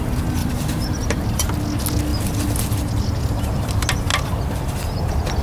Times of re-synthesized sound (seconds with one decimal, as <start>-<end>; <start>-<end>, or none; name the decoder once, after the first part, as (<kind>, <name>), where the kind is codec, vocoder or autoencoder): 0.4-1.5 (vocoder, BigVGAN v2)